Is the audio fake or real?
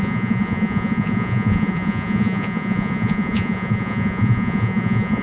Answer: fake